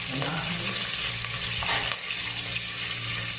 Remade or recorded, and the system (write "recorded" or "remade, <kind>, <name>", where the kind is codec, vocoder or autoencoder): recorded